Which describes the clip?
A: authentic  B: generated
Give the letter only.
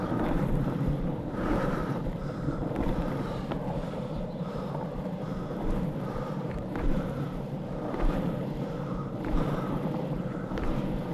B